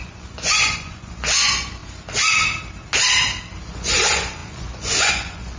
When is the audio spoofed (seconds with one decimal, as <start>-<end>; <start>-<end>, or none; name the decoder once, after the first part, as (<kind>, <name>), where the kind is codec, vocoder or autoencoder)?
0.0-1.8 (vocoder, Vocos); 3.6-5.6